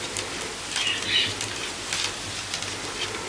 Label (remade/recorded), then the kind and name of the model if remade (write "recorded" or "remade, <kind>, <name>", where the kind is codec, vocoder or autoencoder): recorded